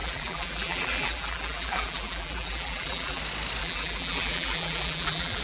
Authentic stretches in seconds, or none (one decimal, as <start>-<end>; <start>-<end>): 3.2-3.6